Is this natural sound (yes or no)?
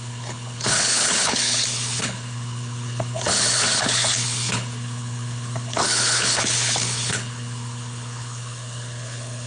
no